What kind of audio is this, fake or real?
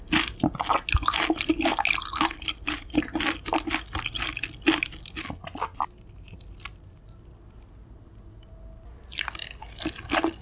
real